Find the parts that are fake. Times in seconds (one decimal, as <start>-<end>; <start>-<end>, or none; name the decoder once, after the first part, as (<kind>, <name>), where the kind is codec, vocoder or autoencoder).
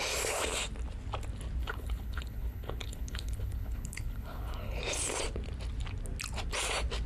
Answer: 1.6-4.8 (codec, HILCodec)